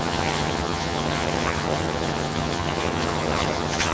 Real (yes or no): no